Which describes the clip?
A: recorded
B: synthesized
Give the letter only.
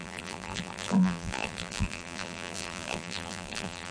B